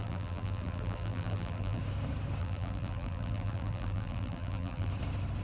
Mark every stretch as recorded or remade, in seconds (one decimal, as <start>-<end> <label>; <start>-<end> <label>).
0.0-1.8 remade; 1.8-2.4 recorded; 2.4-4.9 remade; 4.9-5.4 recorded